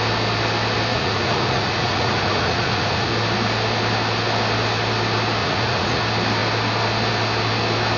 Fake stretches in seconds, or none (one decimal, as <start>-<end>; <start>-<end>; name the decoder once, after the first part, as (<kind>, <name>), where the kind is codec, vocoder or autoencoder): 0.9-3.1 (vocoder, Vocos); 5.4-6.0